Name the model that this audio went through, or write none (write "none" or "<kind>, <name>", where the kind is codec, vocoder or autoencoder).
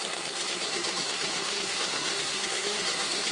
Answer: codec, SNAC